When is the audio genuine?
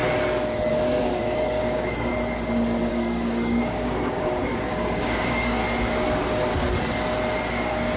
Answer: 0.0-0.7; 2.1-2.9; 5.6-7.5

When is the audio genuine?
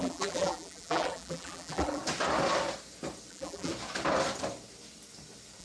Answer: 2.0-3.3; 3.7-5.6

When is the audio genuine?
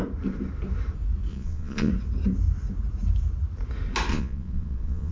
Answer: 0.0-1.3; 1.9-4.1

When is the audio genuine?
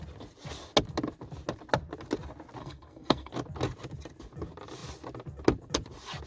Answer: 0.0-2.6; 3.3-6.3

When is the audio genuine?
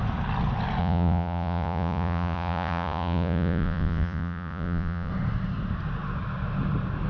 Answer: 0.0-0.8; 5.1-7.1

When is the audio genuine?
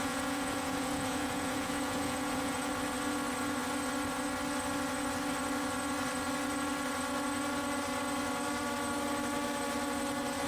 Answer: 2.7-10.5